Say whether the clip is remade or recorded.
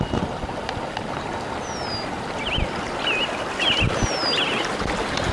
recorded